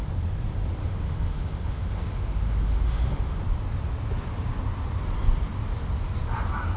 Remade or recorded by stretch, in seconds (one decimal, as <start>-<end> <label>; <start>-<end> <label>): 0.0-0.8 recorded; 0.8-3.4 remade; 3.4-6.8 recorded